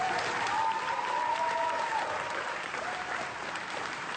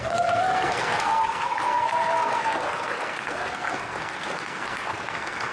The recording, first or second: first